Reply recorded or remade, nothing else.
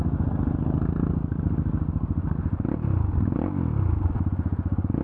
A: recorded